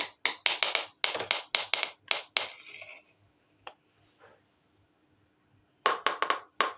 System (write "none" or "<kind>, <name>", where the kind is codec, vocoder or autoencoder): none